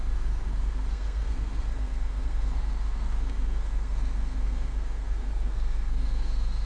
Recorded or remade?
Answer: remade